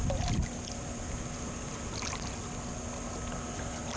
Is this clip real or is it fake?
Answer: real